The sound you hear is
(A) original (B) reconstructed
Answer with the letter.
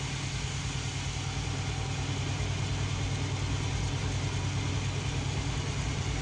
A